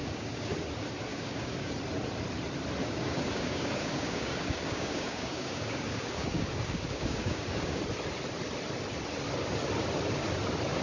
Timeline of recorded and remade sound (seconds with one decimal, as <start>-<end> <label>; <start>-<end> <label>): 0.0-0.5 remade; 0.5-1.1 recorded; 1.1-1.7 remade; 1.7-2.8 recorded; 2.8-7.8 remade; 7.8-10.8 recorded